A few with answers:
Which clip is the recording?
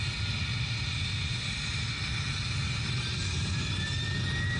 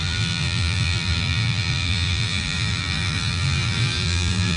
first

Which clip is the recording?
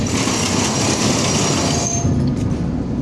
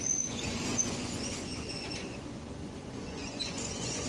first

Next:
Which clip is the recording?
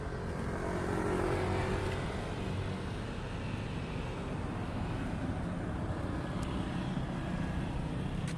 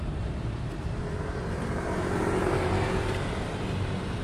first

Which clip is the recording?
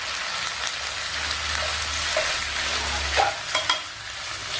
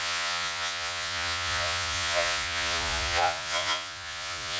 first